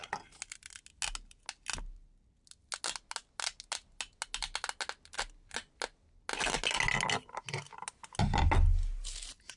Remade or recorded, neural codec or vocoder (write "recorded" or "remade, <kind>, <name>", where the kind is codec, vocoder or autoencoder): recorded